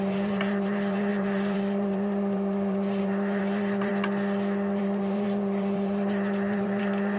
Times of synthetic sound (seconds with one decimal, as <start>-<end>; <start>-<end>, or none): 0.0-3.9; 4.8-7.2